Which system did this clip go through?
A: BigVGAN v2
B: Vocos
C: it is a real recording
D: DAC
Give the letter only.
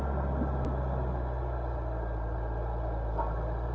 C